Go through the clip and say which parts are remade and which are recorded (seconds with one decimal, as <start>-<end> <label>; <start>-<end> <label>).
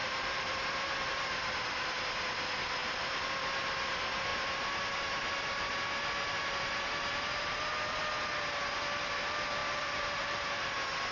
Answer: 0.0-0.6 remade; 0.6-2.8 recorded; 2.8-3.3 remade; 3.3-9.6 recorded; 9.6-10.5 remade; 10.5-11.1 recorded